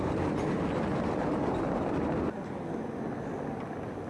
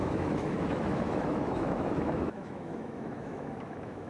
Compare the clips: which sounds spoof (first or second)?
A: second